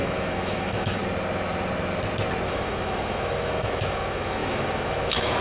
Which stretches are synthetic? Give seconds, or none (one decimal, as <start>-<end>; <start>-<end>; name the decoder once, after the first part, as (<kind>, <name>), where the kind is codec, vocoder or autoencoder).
0.0-1.0 (autoencoder, DAC-VAE); 2.5-5.4